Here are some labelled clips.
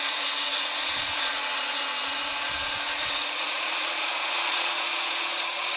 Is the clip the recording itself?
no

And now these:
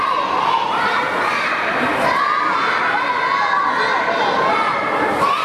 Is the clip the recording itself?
no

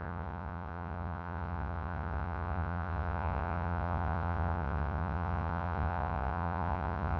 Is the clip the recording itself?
no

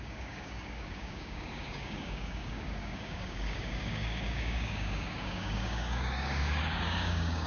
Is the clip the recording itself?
no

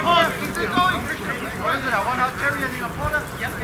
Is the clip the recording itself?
yes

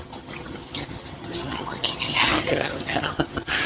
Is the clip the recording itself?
no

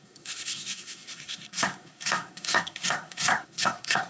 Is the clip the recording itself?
no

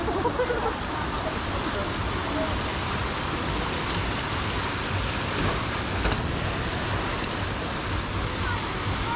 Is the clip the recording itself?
yes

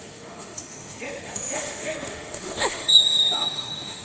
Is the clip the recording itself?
no